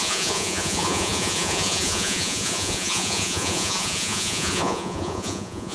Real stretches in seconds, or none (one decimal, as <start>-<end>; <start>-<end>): none